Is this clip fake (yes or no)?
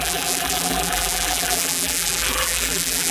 yes